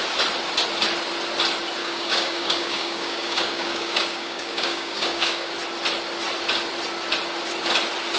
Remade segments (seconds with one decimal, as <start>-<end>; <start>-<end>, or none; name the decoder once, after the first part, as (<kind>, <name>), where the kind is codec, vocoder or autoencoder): 1.8-5.5 (codec, DAC)